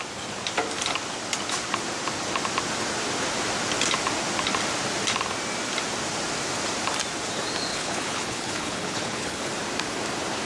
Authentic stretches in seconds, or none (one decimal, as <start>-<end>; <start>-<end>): 0.0-7.7; 9.5-10.5